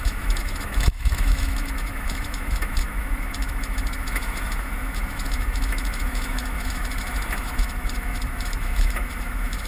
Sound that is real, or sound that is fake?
fake